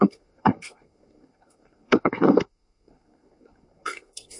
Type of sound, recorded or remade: remade